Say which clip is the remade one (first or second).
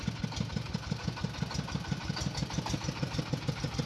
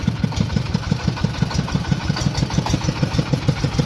second